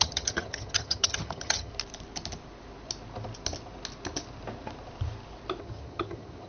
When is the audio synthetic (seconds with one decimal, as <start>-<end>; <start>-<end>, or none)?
0.0-1.7; 5.6-6.5